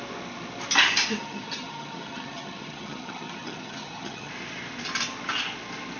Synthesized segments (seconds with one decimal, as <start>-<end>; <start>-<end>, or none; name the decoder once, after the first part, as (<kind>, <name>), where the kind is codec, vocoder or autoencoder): 1.2-4.3 (vocoder, HiFi-GAN)